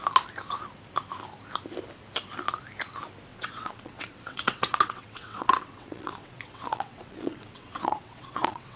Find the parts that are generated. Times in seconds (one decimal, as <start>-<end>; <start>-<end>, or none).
3.3-8.8